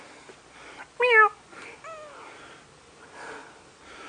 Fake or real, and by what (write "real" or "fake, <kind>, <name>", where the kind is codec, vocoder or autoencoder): real